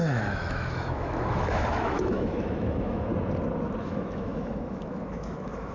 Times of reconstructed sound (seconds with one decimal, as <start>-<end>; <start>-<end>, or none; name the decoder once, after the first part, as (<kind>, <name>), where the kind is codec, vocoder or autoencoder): 0.0-3.1 (autoencoder, DAC-VAE); 3.8-5.7